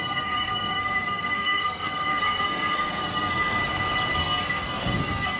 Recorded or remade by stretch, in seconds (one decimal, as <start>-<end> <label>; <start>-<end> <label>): 0.0-3.6 remade; 3.6-4.2 recorded; 4.2-5.4 remade